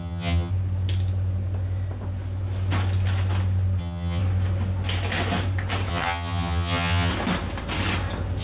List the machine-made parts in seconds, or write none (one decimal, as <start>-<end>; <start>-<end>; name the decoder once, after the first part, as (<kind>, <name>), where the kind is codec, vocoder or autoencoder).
0.0-0.5 (vocoder, HiFi-GAN); 3.8-4.2; 5.9-7.1